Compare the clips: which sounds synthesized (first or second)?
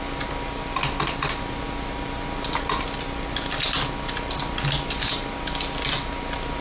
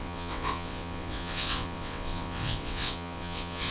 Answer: second